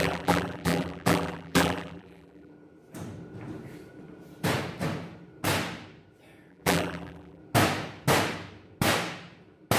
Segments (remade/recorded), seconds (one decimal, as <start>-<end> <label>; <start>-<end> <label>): 0.0-2.5 remade; 2.5-6.5 recorded; 6.5-7.4 remade; 7.4-9.8 recorded

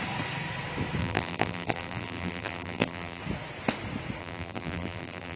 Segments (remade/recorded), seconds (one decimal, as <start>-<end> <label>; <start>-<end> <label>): 0.0-1.0 recorded; 1.0-3.2 remade; 3.2-4.2 recorded; 4.2-5.4 remade

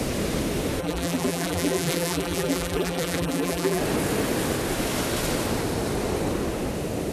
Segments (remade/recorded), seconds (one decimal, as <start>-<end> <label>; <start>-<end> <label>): 0.0-0.8 recorded; 0.8-3.8 remade; 3.8-7.1 recorded

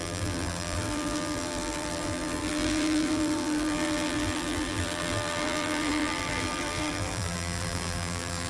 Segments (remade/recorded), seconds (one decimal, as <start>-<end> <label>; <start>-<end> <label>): 0.0-8.5 remade